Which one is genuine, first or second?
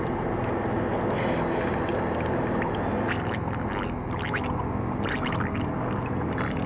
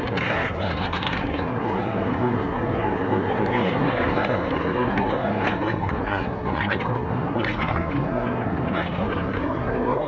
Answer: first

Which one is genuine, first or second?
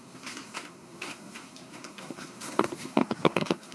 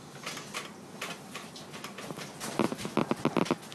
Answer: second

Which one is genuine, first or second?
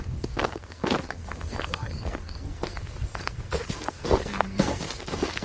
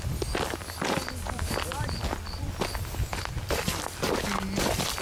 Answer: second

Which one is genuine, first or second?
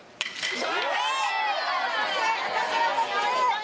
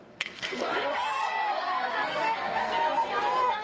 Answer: first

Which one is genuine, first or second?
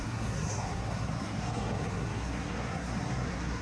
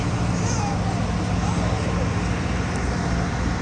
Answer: second